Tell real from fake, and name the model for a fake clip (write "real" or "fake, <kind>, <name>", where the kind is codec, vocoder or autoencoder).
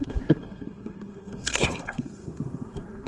fake, codec, SNAC